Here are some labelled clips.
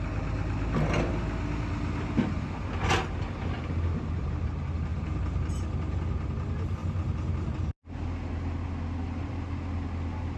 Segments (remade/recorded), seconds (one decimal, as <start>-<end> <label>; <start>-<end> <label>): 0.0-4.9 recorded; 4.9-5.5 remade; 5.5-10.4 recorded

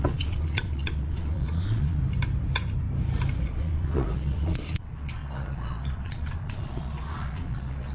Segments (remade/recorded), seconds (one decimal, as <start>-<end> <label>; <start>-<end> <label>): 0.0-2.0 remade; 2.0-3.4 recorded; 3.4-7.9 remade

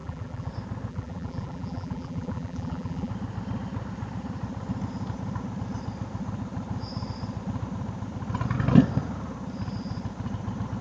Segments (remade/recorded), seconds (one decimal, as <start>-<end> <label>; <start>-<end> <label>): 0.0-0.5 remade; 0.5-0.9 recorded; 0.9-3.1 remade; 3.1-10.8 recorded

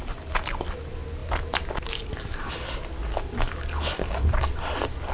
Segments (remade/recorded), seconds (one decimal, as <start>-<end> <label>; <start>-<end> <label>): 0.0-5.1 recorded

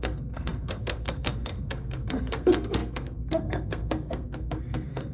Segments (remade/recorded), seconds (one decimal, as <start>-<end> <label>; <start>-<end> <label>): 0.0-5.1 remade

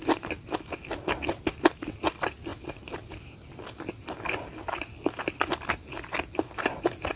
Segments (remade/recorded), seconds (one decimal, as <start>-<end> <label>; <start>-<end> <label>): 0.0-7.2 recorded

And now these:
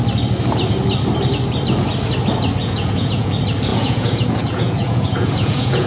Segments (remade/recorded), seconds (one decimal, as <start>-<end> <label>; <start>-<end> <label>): 0.0-2.6 recorded; 2.6-3.3 remade; 3.3-3.7 recorded; 3.7-5.9 remade

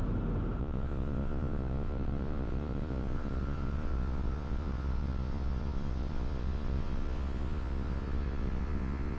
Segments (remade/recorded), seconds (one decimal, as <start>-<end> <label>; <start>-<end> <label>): 0.0-0.6 recorded; 0.6-9.2 remade